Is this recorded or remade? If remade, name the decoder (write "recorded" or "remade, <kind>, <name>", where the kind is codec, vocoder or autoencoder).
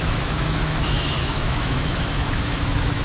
remade, autoencoder, DAC-VAE